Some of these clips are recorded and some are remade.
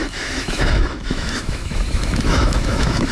remade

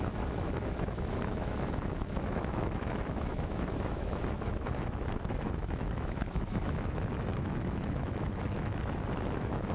remade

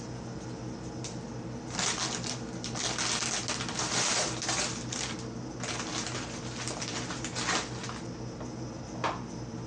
recorded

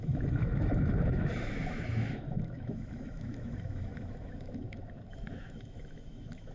remade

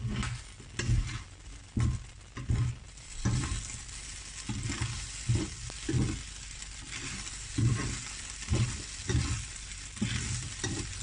recorded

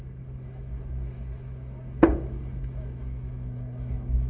remade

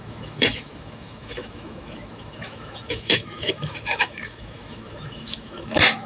remade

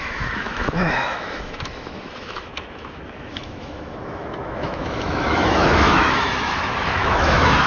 remade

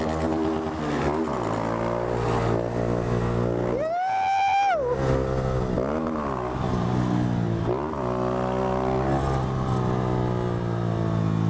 recorded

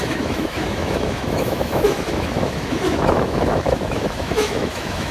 remade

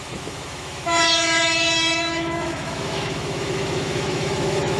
remade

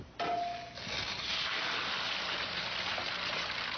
recorded